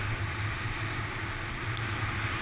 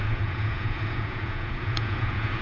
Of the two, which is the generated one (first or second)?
second